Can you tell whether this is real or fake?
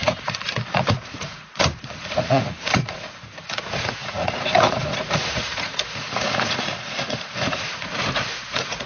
fake